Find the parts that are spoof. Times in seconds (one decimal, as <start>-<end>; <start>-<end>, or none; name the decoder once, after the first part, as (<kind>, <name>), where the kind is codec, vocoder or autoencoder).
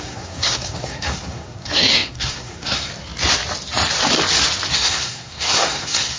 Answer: 0.0-2.9 (codec, SNAC); 4.7-6.2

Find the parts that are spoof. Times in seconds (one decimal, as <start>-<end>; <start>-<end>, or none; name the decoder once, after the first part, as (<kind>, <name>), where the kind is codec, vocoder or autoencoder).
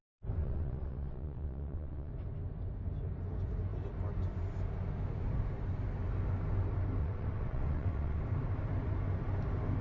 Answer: 0.4-2.1 (vocoder, WaveNeXt); 7.0-8.2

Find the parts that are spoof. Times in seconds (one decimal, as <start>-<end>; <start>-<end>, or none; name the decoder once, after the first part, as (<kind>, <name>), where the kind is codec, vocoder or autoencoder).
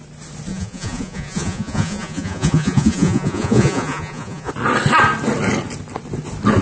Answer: 0.5-4.5 (vocoder, Vocos)